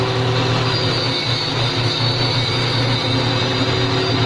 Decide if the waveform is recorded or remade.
recorded